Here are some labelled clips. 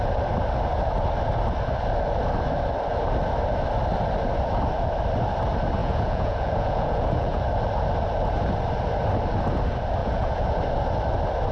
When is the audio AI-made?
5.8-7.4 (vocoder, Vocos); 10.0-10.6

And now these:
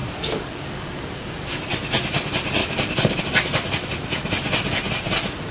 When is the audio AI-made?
0.0-1.6 (codec, DAC); 2.6-3.2